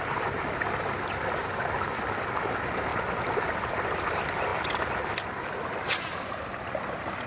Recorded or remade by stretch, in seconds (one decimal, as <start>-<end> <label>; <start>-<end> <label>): 0.0-7.3 recorded